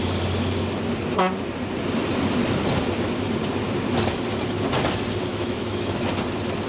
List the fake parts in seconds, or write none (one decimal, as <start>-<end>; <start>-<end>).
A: 5.3-6.1